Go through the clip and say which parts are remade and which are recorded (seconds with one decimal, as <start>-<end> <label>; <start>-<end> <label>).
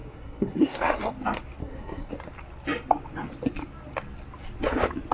0.0-1.1 remade; 1.1-1.6 recorded; 1.6-2.1 remade; 2.1-5.1 recorded